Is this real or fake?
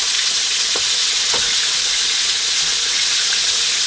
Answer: fake